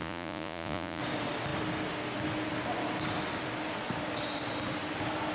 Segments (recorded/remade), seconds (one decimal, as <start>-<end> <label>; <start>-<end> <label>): 0.0-1.0 remade; 1.0-5.3 recorded